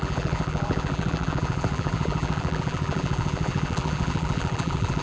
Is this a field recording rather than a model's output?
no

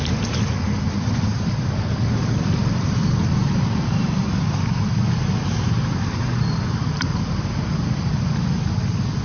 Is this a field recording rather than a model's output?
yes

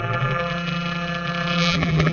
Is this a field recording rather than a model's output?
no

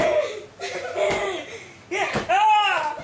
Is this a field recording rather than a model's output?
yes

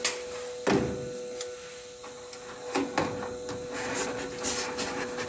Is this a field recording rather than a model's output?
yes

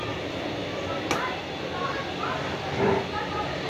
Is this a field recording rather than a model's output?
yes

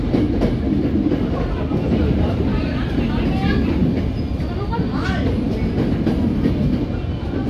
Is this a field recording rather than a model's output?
yes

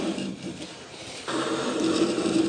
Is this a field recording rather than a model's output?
no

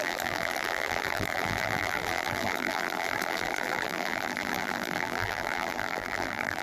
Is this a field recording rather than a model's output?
no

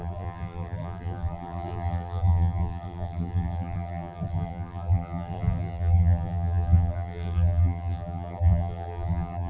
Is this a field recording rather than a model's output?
no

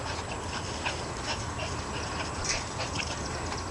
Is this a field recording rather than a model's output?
no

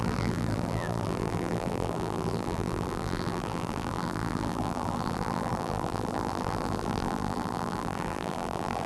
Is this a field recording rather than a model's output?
no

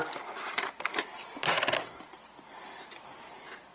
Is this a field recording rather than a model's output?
yes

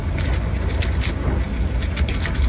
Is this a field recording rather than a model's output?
yes